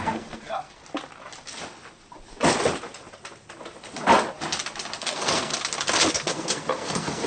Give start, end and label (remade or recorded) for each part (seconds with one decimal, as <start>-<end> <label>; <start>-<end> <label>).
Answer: 0.0-0.8 remade; 0.8-5.0 recorded; 5.0-5.5 remade; 5.5-6.1 recorded; 6.1-7.3 remade